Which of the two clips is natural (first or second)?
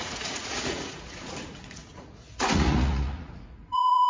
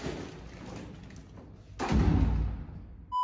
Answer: second